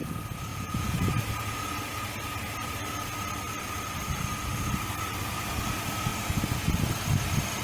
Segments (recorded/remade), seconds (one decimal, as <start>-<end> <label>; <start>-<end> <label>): 0.0-0.5 recorded; 0.5-1.1 remade; 1.1-7.6 recorded